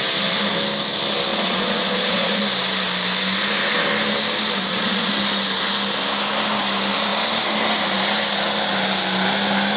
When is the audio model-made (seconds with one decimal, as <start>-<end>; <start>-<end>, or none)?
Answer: 1.3-2.4; 4.6-5.1